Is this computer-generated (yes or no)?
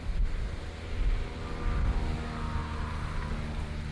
no